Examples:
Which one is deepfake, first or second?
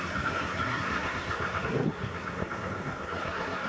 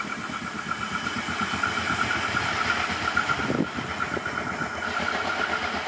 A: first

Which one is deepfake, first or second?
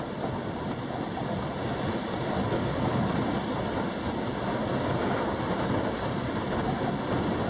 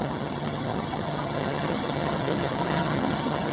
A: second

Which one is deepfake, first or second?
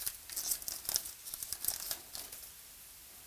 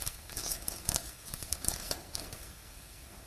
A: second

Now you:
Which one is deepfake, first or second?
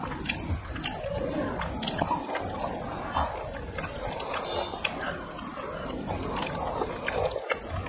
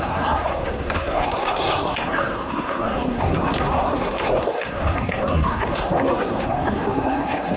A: second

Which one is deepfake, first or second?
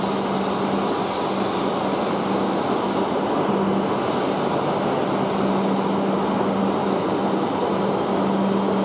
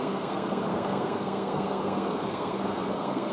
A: second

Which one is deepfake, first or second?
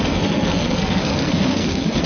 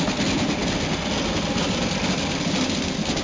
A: first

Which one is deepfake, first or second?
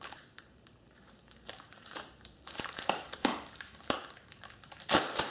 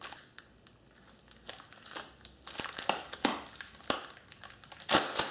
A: first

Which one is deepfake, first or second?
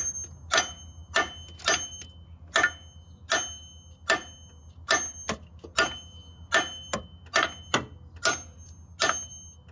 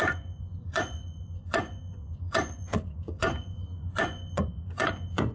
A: second